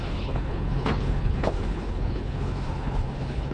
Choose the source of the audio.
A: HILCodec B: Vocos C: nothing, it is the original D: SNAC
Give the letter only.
A